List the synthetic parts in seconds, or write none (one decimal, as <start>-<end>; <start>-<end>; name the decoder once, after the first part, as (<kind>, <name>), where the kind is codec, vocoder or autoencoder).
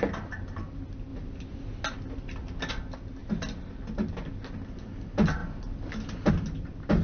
none